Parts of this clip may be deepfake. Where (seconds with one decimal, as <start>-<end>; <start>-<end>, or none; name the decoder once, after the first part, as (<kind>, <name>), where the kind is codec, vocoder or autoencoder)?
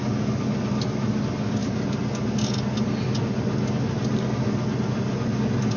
none